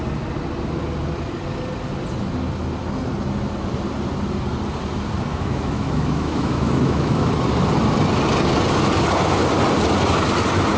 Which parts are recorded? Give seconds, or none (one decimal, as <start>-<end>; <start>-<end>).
0.0-5.3; 7.3-10.8